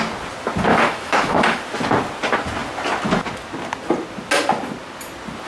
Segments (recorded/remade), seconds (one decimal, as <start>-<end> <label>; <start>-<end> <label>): 0.0-0.7 recorded; 0.7-1.6 remade; 1.6-5.5 recorded